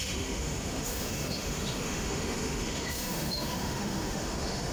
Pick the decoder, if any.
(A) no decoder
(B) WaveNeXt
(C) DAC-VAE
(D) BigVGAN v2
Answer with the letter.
C